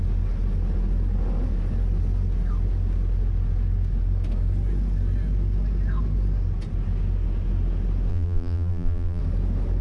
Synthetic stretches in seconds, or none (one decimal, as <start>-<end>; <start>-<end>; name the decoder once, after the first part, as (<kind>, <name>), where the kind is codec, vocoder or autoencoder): 8.1-9.2 (vocoder, BigVGAN v2)